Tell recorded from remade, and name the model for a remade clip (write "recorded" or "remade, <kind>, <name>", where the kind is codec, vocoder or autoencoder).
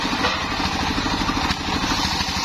recorded